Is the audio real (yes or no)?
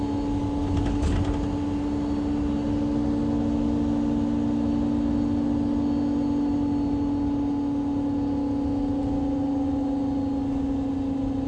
yes